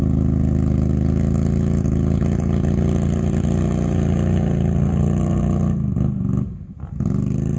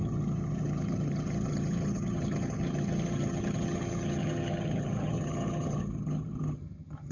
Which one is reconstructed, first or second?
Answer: second